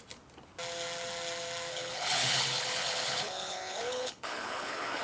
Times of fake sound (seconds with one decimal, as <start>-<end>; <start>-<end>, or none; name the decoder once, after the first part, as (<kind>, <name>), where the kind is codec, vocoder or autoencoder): 1.7-5.0 (codec, HILCodec)